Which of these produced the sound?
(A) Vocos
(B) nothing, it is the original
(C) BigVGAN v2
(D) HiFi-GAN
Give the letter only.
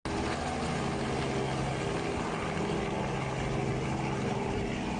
B